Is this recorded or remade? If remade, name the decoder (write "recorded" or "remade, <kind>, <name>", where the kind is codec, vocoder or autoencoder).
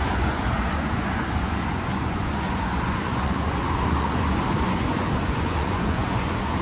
remade, vocoder, Vocos